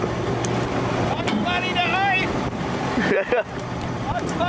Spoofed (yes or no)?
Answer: no